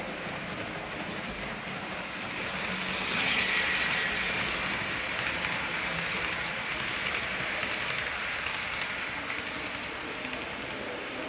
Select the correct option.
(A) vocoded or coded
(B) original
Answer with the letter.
B